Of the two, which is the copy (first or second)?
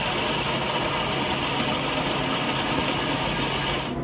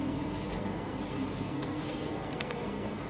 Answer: second